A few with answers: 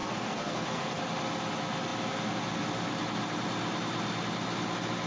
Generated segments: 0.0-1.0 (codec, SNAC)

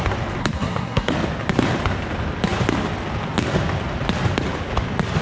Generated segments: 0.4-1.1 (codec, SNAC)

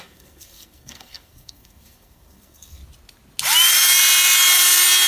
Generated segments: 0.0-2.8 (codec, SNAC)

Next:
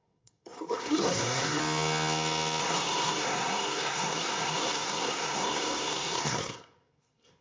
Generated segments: 0.0-1.6 (codec, SNAC); 2.6-7.4